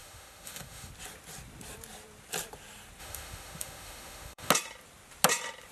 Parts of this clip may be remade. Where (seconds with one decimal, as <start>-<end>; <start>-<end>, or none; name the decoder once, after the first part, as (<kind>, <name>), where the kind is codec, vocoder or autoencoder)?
0.0-0.9 (autoencoder, DAC-VAE); 3.0-4.5